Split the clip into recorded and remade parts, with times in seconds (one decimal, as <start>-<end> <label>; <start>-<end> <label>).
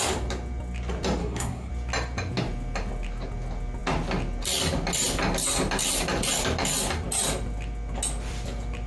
0.0-1.2 recorded; 1.2-1.7 remade; 1.7-8.9 recorded